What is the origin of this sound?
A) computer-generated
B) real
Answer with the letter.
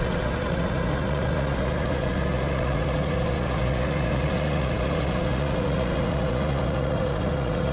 A